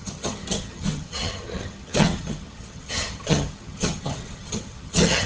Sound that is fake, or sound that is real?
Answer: fake